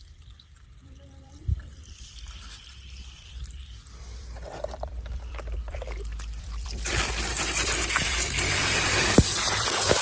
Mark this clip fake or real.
fake